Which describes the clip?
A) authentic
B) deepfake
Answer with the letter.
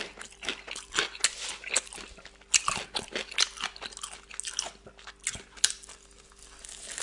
A